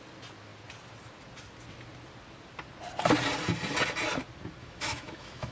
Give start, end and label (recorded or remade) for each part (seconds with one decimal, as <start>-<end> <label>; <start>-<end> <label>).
0.0-4.6 recorded; 4.6-5.5 remade